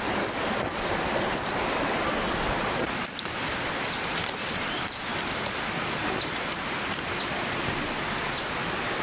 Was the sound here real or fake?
real